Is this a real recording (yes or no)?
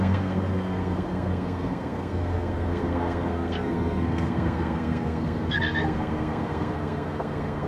no